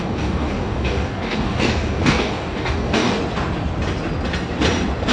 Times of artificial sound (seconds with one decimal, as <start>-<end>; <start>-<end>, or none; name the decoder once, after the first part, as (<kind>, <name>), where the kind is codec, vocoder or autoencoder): 0.0-3.2 (codec, DAC)